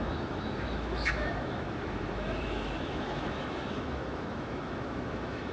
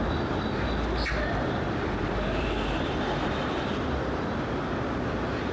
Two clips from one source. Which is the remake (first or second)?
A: first